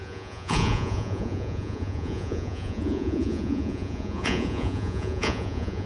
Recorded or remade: remade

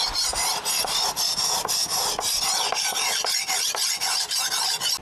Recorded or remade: recorded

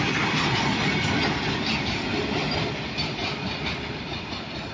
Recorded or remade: recorded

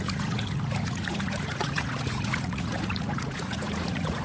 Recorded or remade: remade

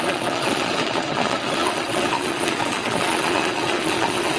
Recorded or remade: remade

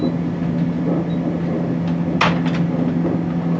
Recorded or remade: recorded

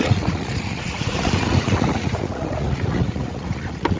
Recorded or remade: remade